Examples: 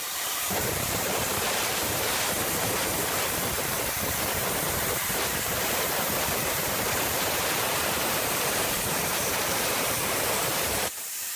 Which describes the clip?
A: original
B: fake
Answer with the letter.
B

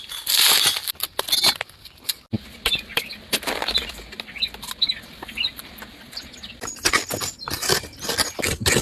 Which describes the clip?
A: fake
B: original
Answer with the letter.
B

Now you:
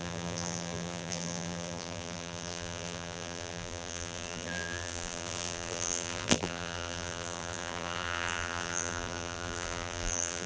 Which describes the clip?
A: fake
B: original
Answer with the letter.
A